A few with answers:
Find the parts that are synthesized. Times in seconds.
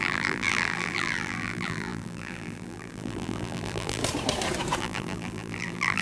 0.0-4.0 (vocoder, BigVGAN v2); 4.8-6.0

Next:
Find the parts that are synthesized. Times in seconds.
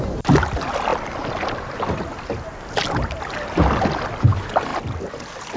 none